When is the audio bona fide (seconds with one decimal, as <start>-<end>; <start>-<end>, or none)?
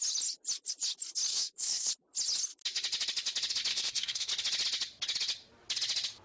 0.0-1.3; 1.9-3.7; 4.3-6.2